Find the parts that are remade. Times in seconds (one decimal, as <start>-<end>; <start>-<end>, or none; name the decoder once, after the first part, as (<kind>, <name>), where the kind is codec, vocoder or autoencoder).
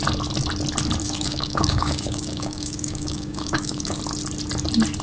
1.0-4.0 (codec, DAC)